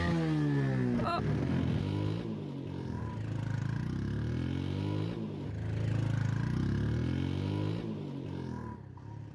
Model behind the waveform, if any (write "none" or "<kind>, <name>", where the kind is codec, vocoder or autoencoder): none